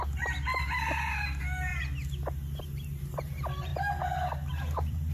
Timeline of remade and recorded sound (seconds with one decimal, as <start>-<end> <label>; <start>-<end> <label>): 0.0-1.7 remade; 1.7-2.6 recorded; 2.6-3.7 remade; 3.7-4.5 recorded; 4.5-5.1 remade